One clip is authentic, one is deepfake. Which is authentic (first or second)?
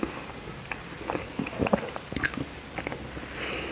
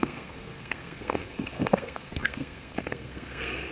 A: first